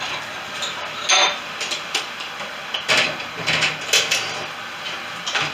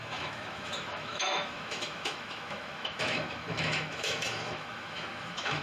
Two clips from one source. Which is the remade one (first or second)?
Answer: second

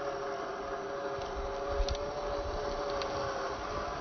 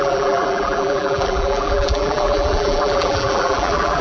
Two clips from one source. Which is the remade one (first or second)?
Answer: second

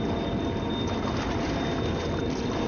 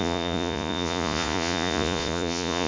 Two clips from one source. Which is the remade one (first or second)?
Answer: second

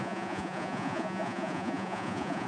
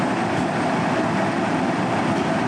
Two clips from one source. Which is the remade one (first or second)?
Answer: first